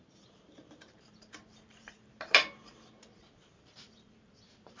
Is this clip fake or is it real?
fake